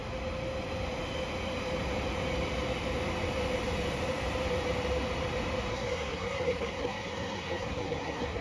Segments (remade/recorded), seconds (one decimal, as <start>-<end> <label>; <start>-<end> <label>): 0.0-5.7 recorded; 5.7-8.4 remade